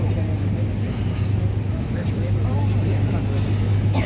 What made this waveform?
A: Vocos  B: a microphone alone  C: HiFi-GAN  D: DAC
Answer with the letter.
B